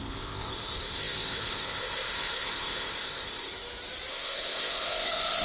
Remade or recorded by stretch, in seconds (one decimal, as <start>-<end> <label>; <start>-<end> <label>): 0.0-3.5 remade; 3.5-4.1 recorded; 4.1-5.4 remade